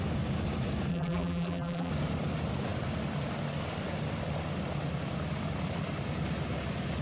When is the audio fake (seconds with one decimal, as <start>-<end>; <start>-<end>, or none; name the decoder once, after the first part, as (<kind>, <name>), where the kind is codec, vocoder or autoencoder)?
0.9-1.9 (vocoder, BigVGAN v2)